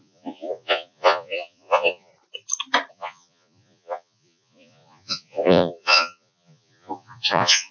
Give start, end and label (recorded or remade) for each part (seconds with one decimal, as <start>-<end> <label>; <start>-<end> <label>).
0.0-2.1 remade; 2.1-2.9 recorded; 2.9-7.7 remade